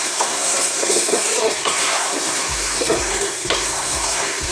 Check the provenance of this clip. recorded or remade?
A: remade